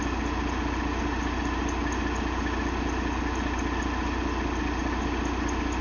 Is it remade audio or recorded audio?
recorded